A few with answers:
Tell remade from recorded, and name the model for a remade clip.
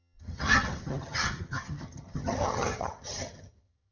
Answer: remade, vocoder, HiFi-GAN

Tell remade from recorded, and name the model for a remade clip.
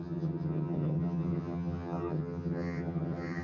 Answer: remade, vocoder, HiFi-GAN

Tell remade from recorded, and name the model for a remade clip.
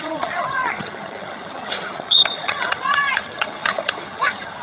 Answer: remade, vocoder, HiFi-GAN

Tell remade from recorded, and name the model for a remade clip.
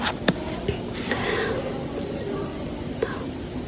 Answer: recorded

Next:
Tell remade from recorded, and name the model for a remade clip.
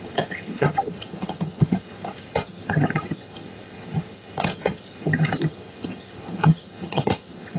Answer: remade, vocoder, HiFi-GAN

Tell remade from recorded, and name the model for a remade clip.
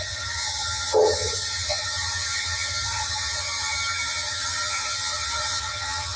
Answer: remade, vocoder, HiFi-GAN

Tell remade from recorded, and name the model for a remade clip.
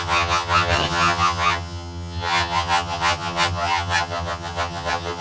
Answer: remade, vocoder, HiFi-GAN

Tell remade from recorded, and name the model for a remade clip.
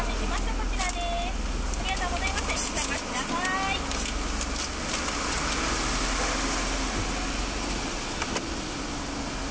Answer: recorded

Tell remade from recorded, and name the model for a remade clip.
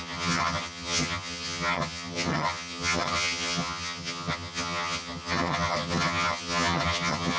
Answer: remade, vocoder, HiFi-GAN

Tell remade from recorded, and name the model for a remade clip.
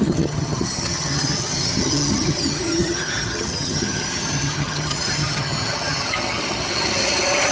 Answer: remade, vocoder, HiFi-GAN